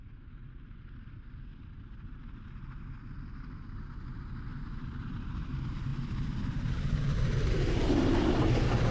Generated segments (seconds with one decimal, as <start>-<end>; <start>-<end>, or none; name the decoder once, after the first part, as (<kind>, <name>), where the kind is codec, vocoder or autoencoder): 4.5-5.5 (vocoder, BigVGAN v2); 5.9-8.4

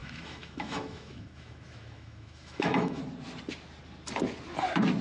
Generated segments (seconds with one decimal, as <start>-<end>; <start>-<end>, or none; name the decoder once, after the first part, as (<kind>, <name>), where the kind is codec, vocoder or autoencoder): 0.0-3.0 (autoencoder, DAC-VAE)

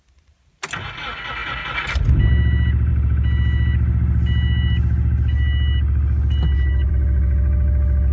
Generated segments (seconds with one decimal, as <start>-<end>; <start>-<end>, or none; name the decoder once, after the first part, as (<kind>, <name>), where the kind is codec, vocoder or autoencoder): none

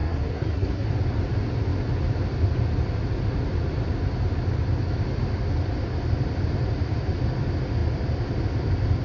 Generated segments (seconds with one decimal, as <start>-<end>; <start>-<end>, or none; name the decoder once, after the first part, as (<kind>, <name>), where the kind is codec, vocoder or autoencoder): 0.0-0.9 (codec, SNAC)

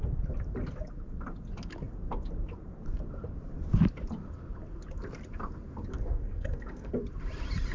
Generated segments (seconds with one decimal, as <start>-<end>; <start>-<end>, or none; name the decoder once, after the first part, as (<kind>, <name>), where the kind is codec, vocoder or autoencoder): 5.9-6.9 (codec, SNAC)